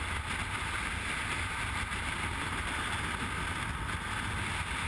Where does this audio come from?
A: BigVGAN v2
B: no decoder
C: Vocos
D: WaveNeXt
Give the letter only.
B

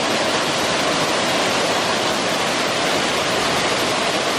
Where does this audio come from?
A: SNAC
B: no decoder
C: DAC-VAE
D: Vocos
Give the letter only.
B